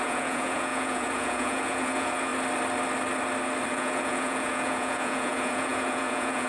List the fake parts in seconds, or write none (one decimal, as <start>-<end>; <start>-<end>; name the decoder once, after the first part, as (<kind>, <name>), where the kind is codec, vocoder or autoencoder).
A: 0.0-2.3 (vocoder, Vocos); 3.7-6.5

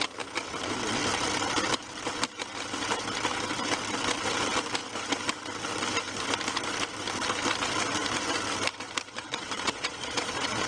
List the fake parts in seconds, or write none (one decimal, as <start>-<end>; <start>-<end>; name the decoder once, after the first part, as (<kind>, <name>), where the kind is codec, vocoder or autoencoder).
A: 9.1-10.7 (vocoder, Vocos)

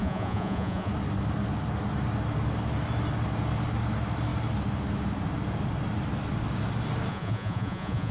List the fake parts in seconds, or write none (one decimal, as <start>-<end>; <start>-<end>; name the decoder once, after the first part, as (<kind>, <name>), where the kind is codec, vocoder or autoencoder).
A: 0.0-0.9 (vocoder, Vocos); 7.1-8.1

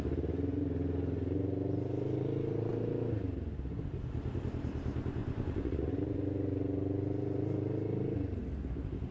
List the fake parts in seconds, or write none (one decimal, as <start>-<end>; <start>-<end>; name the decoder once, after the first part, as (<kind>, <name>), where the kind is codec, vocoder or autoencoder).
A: 5.2-5.8 (vocoder, Vocos)

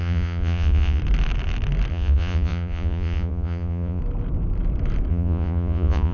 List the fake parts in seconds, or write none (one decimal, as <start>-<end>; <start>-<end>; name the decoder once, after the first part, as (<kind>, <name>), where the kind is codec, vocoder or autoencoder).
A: 0.0-1.0 (vocoder, Vocos); 1.9-4.0; 5.1-6.1